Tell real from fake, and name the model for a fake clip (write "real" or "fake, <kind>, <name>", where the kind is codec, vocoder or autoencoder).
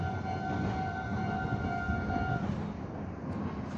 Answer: real